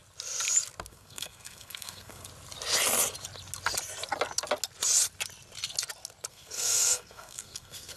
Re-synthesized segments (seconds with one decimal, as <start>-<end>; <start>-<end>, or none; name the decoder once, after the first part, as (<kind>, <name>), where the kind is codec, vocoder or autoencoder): 0.9-2.3 (codec, SNAC); 6.3-8.0